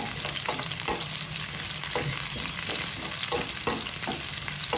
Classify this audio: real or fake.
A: real